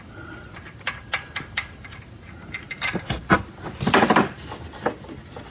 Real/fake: real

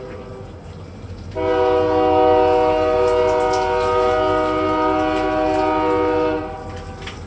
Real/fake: real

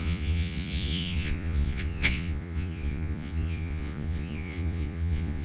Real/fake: fake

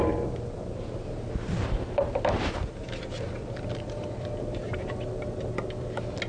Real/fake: real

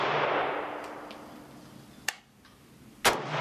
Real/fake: real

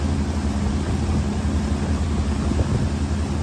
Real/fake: real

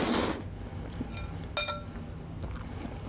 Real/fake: real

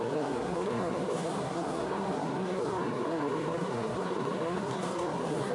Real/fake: fake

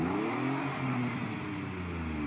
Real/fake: real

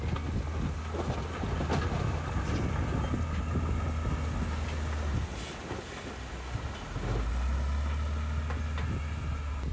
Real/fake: real